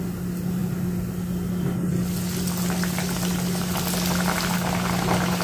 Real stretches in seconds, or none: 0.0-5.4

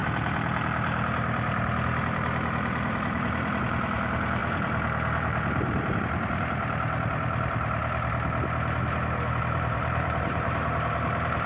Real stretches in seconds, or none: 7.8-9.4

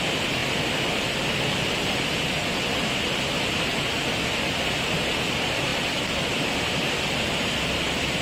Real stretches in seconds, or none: 0.0-8.2

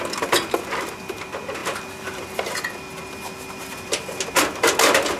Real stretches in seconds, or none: 0.0-5.2